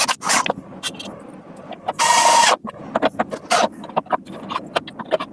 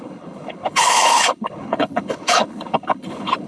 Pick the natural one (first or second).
first